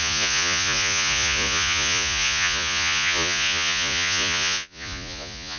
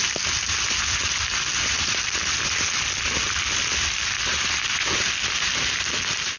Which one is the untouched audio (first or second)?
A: second